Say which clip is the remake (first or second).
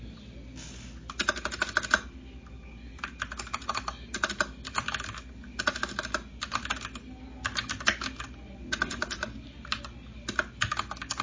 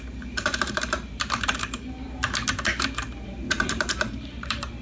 second